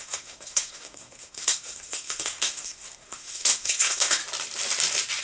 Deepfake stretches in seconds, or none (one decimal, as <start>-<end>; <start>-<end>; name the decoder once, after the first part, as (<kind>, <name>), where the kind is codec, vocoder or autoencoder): 0.0-4.2 (codec, SNAC)

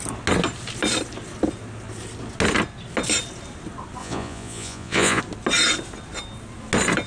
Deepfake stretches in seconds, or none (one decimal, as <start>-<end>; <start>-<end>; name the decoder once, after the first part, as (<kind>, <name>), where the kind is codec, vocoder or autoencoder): 4.0-5.2 (vocoder, Vocos)